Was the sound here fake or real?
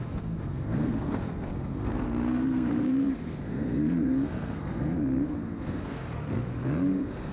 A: fake